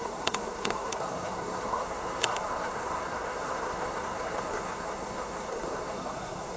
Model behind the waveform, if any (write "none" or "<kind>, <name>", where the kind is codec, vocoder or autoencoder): codec, SNAC